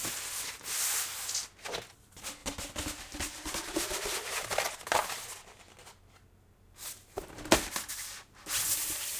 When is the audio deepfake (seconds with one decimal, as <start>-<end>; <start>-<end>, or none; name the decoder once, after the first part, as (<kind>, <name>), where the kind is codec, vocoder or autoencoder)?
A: none